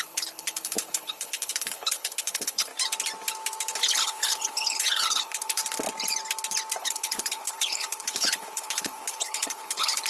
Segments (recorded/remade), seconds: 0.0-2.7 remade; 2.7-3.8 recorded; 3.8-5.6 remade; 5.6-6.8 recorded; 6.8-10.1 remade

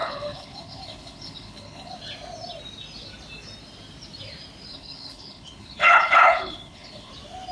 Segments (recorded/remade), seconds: 0.0-1.9 remade; 1.9-4.7 recorded; 4.7-7.1 remade; 7.1-7.5 recorded